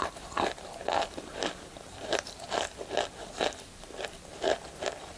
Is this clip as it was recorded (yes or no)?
no